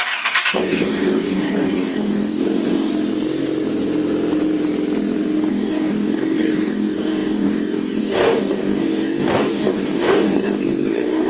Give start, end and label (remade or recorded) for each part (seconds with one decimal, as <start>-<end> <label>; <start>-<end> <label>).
0.0-2.9 remade; 2.9-5.5 recorded; 5.5-11.3 remade